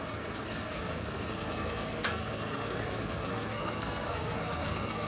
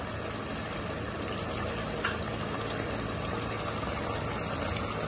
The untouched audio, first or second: second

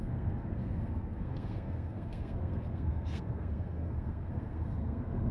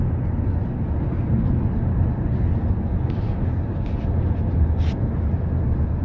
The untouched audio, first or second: second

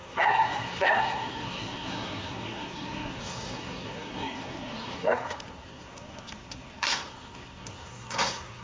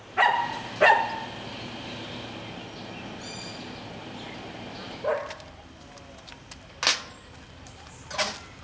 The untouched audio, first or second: second